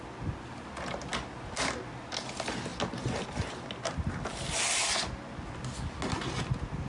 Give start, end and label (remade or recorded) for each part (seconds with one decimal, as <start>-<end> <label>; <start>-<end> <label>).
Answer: 0.0-6.9 recorded

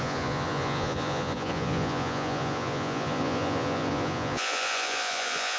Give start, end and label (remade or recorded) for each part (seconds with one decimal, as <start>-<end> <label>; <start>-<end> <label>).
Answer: 0.0-5.6 remade

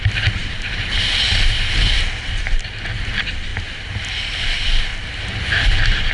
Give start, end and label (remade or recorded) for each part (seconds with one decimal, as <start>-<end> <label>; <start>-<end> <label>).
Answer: 0.0-0.4 recorded; 0.4-0.9 remade; 0.9-4.9 recorded; 4.9-5.6 remade; 5.6-6.1 recorded

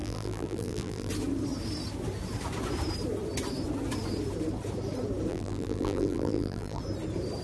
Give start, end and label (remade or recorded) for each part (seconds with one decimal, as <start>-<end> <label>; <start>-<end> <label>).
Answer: 0.0-1.1 remade; 1.1-5.3 recorded; 5.3-6.8 remade; 6.8-7.4 recorded

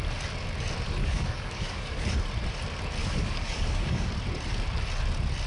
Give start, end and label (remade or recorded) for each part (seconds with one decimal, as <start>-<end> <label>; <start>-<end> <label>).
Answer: 0.0-1.0 recorded; 1.0-2.1 remade; 2.1-3.0 recorded; 3.0-4.1 remade; 4.1-5.5 recorded

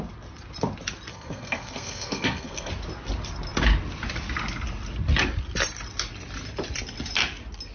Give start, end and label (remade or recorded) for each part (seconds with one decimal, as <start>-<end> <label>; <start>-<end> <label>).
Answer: 0.0-1.1 recorded; 1.1-2.7 remade; 2.7-7.7 recorded

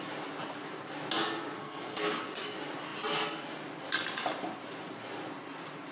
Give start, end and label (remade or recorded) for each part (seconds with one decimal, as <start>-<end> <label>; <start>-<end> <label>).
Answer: 0.0-1.6 recorded; 1.6-2.2 remade; 2.2-5.9 recorded